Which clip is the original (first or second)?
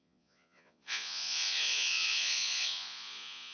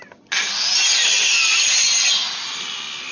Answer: second